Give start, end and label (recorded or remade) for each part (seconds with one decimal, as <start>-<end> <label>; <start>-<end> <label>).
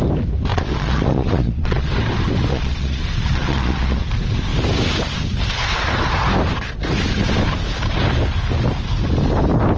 0.0-0.5 recorded; 0.5-1.9 remade; 1.9-2.5 recorded; 2.5-4.0 remade; 4.0-9.8 recorded